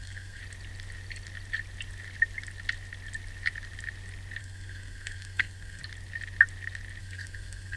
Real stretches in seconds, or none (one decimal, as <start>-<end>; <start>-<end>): 0.4-4.4; 5.8-7.0